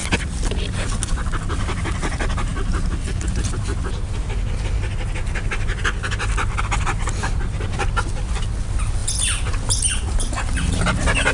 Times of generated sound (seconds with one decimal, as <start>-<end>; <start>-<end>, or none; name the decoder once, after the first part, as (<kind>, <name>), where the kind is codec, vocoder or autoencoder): none